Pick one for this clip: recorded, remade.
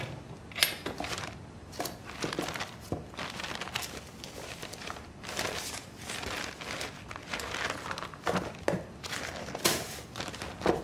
recorded